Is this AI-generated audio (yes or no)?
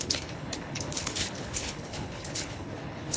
yes